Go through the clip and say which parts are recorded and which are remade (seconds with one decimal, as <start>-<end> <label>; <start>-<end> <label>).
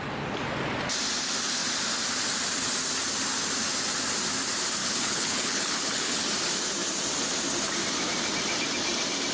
0.0-4.8 recorded; 4.8-6.2 remade; 6.2-9.3 recorded